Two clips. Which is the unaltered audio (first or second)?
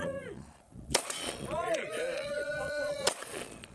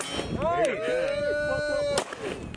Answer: second